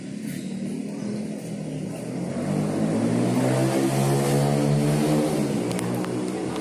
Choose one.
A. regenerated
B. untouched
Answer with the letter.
B